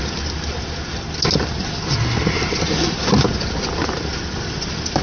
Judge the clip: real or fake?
real